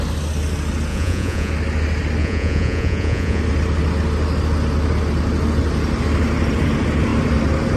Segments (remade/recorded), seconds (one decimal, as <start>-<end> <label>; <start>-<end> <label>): 0.0-0.9 recorded; 0.9-1.5 remade; 1.5-2.2 recorded; 2.2-3.4 remade; 3.4-7.8 recorded